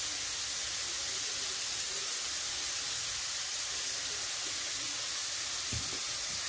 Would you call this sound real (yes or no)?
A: yes